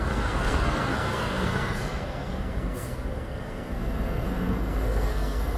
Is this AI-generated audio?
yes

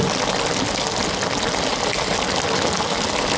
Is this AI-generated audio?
no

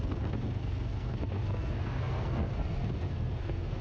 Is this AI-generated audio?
yes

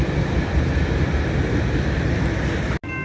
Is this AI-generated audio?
no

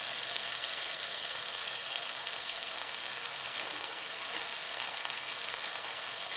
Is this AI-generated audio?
yes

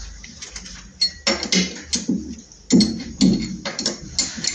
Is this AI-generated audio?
no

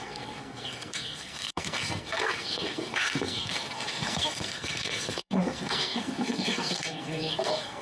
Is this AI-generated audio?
yes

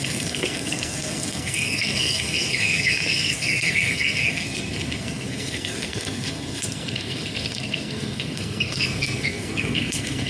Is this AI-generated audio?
yes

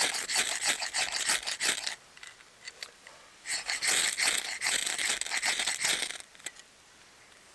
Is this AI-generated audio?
no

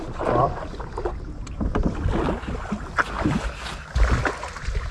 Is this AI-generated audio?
no